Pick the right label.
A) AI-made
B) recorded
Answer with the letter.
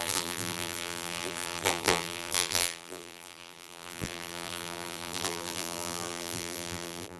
A